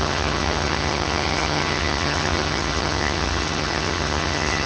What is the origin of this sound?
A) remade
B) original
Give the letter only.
A